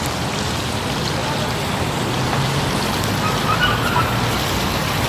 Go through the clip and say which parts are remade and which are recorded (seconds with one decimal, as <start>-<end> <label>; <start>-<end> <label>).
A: 0.0-5.1 recorded